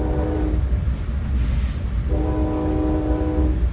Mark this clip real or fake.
real